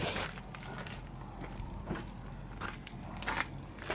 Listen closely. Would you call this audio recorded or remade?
recorded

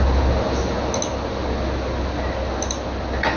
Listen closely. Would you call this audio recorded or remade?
recorded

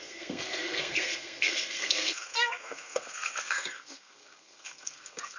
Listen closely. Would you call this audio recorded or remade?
remade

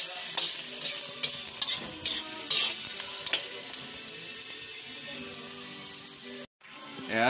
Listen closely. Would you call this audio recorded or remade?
recorded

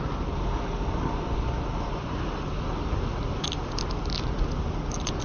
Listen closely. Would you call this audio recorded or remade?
recorded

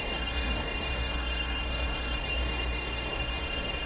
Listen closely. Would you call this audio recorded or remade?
remade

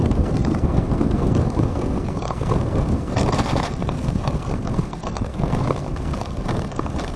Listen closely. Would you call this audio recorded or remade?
remade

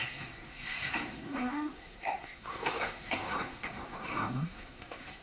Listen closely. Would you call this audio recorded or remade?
remade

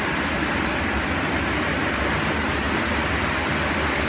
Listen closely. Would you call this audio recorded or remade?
recorded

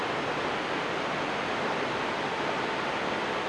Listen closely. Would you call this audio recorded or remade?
recorded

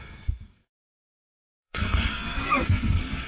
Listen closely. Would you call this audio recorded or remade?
remade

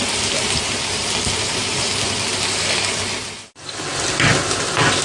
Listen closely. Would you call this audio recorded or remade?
recorded